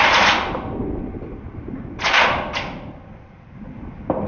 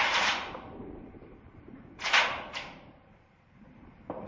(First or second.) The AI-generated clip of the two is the second